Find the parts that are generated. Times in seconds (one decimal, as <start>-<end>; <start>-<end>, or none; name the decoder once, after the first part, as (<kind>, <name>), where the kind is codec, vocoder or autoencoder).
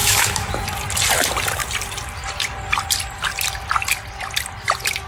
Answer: 0.0-0.5 (autoencoder, DAC-VAE)